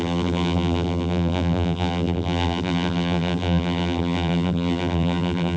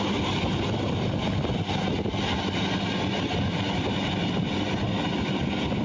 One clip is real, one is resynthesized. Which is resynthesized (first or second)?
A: first